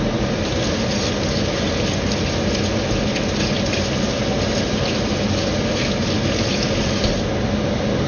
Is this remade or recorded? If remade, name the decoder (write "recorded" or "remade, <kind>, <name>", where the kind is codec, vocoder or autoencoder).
recorded